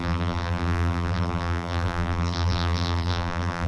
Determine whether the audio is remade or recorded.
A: remade